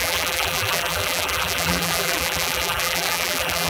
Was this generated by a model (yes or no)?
yes